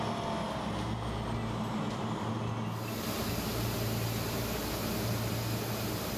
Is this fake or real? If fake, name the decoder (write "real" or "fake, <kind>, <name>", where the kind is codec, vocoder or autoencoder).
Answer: real